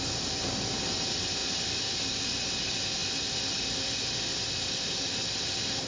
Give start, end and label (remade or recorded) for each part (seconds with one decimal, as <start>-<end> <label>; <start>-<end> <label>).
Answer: 0.0-5.9 recorded